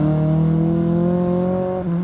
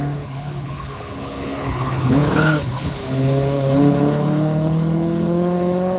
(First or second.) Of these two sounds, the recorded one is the first